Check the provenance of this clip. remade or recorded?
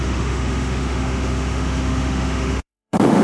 remade